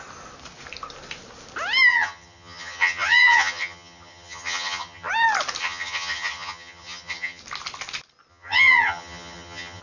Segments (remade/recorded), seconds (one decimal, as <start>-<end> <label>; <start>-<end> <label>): 0.0-1.9 recorded; 1.9-5.1 remade; 5.1-5.6 recorded; 5.6-7.4 remade; 7.4-8.3 recorded; 8.3-9.8 remade